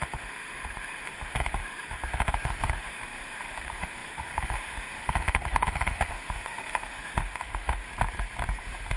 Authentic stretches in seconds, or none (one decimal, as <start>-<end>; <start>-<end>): 7.9-8.6